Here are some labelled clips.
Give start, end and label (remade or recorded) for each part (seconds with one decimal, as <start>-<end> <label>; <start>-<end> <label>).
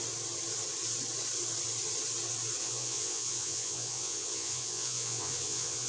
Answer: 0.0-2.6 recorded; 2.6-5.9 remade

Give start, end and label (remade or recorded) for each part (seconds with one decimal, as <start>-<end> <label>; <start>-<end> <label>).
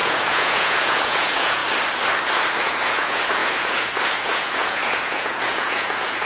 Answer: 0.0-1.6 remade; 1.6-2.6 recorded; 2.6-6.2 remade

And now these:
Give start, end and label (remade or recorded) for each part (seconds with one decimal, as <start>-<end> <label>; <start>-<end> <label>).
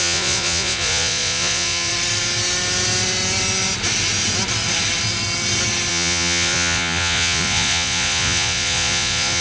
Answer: 0.0-1.9 remade; 1.9-5.9 recorded; 5.9-9.4 remade